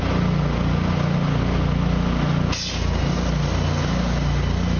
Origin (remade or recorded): recorded